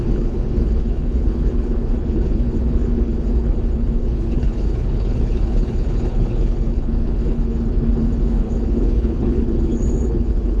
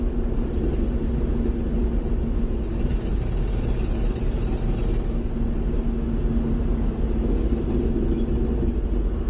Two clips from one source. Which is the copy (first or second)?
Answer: first